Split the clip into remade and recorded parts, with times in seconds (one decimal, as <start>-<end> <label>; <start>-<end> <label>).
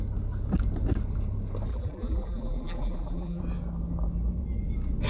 0.0-1.7 recorded; 1.7-3.4 remade; 3.4-5.1 recorded